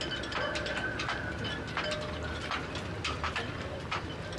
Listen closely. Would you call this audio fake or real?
real